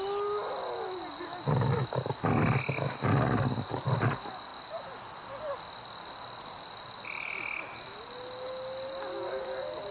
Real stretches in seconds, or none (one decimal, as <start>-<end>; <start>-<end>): 0.0-9.9